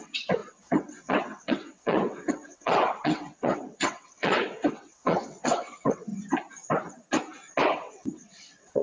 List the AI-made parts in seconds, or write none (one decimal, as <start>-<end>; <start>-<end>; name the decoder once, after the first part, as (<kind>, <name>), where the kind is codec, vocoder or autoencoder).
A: 0.0-6.1 (vocoder, WaveNeXt); 7.7-8.8